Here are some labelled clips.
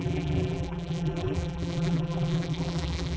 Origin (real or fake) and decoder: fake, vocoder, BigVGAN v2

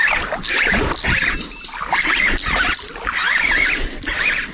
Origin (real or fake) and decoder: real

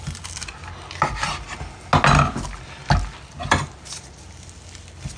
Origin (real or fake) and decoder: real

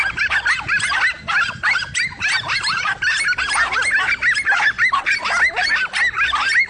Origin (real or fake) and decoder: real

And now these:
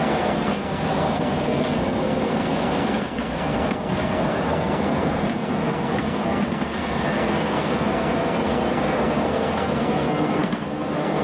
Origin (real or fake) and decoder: fake, codec, SNAC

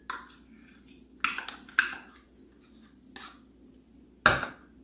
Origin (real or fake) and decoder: real